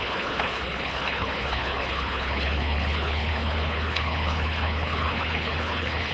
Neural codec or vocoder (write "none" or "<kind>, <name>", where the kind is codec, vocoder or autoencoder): codec, HILCodec